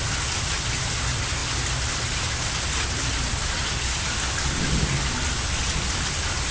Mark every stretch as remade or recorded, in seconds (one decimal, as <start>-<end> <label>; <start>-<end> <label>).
0.0-6.5 recorded